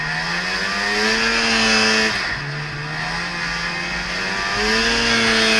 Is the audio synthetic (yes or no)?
no